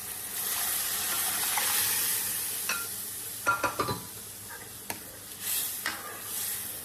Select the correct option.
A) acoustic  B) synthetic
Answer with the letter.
A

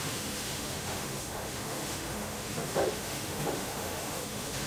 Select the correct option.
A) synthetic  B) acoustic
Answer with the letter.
A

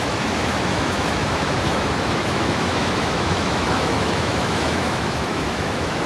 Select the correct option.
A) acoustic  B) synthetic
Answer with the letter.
B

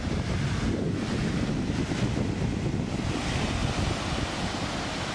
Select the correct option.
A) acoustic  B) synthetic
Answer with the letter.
A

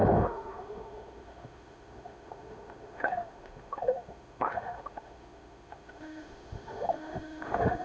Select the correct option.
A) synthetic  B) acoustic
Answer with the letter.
A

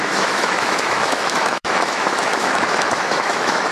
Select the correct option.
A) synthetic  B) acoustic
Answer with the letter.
A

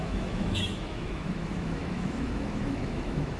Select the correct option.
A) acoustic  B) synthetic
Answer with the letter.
B